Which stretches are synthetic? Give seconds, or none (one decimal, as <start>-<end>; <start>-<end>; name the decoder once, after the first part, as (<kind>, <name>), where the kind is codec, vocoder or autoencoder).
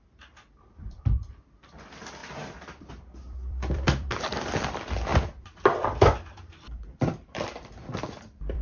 0.0-8.6 (vocoder, BigVGAN v2)